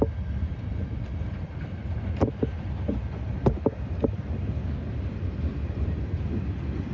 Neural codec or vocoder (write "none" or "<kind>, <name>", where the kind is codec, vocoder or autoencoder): none